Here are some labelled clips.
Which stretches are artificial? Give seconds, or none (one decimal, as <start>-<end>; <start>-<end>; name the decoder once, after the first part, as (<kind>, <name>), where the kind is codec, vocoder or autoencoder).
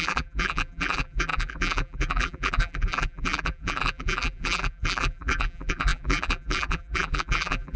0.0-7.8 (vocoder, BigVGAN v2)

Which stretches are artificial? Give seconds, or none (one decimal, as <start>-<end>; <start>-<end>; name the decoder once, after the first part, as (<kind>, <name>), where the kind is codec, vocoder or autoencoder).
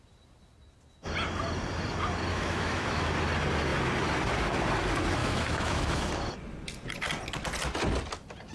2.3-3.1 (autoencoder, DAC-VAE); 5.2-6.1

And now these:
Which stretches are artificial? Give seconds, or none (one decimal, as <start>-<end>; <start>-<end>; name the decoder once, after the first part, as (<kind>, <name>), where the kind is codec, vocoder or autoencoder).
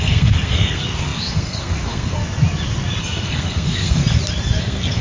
0.0-2.2 (codec, SNAC); 3.0-4.0; 4.6-5.0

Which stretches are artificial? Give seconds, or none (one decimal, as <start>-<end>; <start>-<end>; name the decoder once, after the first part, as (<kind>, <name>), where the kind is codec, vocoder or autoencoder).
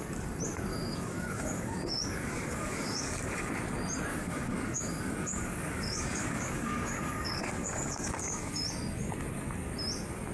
0.7-3.5 (codec, DAC); 4.1-8.5